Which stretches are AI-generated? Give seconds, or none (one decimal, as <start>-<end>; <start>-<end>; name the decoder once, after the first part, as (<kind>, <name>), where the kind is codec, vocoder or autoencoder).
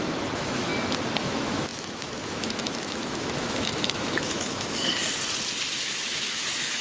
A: 0.0-0.7 (autoencoder, DAC-VAE); 1.2-4.9; 5.7-6.8